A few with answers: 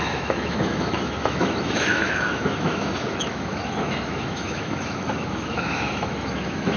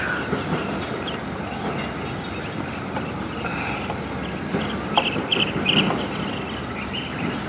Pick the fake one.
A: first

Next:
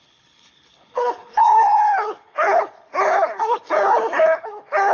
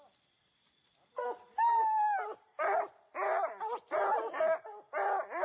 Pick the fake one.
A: first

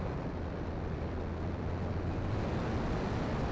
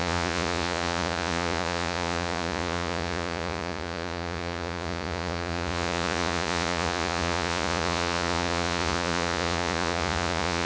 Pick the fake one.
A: second